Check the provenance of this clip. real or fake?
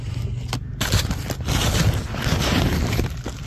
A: real